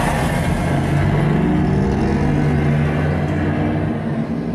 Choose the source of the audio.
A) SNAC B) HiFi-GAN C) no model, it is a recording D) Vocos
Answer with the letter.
C